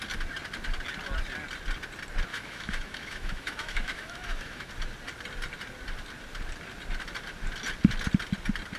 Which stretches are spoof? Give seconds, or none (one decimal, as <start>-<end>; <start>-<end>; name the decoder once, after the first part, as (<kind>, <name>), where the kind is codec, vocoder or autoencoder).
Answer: 2.3-4.7 (autoencoder, DAC-VAE)

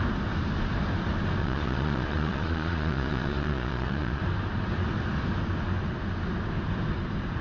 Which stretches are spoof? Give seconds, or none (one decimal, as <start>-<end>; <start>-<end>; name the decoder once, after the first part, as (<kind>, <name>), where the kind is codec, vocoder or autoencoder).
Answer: 1.4-4.2 (vocoder, Vocos)

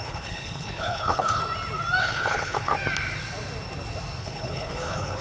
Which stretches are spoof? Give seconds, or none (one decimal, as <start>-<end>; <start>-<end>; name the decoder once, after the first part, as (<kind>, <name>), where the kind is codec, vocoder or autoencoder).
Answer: 0.0-1.4 (codec, HILCodec); 2.0-2.7; 4.2-5.2

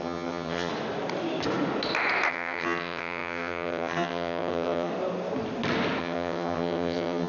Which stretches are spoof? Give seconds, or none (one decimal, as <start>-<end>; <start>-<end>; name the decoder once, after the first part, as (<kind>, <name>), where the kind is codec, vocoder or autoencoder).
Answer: 0.0-0.7 (vocoder, HiFi-GAN); 2.3-4.9; 6.0-7.3

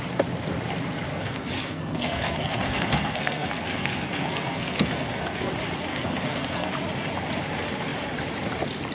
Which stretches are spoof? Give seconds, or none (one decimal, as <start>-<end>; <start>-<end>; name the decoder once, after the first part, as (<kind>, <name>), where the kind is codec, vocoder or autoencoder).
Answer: 1.1-5.5 (codec, SNAC); 5.9-6.7

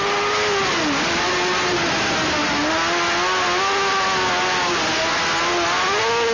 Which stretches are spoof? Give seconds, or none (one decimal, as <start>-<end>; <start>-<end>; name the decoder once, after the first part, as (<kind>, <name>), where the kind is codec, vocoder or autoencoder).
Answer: none